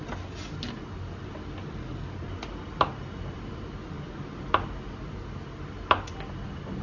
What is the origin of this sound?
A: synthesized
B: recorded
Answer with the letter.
B